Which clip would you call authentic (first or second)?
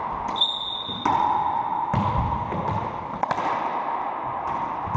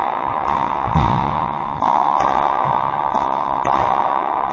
first